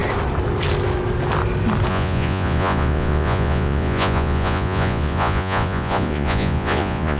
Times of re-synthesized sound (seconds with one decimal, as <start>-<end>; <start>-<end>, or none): 1.9-7.2